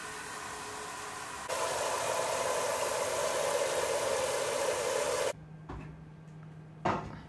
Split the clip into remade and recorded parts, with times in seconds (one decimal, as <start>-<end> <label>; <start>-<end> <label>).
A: 0.0-7.3 recorded